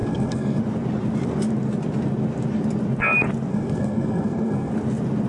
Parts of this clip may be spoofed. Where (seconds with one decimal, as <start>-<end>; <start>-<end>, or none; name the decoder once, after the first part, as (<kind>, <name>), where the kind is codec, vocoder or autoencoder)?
0.0-0.6 (codec, SNAC); 3.5-4.7